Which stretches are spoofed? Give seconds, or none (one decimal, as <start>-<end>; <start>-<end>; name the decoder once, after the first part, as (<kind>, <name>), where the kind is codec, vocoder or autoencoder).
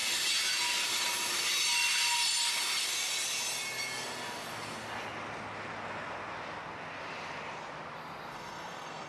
8.3-9.1 (codec, SNAC)